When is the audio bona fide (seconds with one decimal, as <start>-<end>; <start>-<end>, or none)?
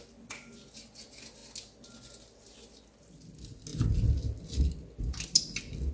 0.0-5.9